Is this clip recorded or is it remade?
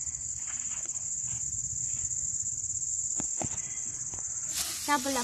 remade